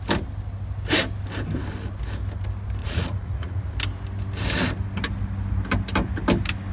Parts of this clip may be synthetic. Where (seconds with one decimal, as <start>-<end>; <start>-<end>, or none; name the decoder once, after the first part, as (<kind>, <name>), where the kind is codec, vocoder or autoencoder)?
2.8-3.7 (vocoder, Vocos)